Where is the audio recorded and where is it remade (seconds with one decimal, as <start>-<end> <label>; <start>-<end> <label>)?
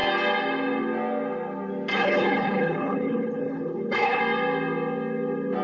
0.0-1.9 recorded; 1.9-4.2 remade; 4.2-5.6 recorded